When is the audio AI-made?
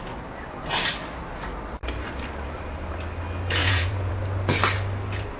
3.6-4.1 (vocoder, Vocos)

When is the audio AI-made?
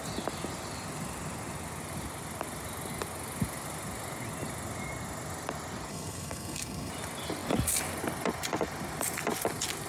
5.9-6.9 (codec, SNAC)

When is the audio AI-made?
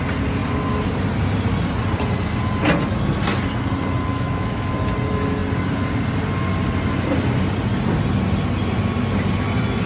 4.1-4.7 (autoencoder, DAC-VAE)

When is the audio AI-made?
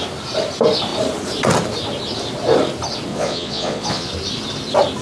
3.1-4.1 (vocoder, Vocos)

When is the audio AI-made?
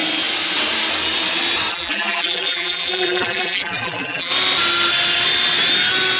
1.7-4.3 (vocoder, BigVGAN v2)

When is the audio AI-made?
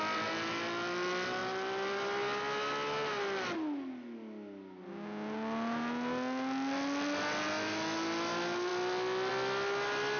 none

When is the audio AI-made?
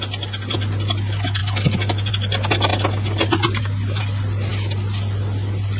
1.4-2.1 (vocoder, BigVGAN v2)